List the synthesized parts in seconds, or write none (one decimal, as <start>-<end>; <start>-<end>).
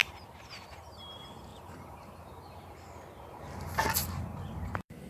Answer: 0.0-1.1; 1.5-2.7; 4.0-5.1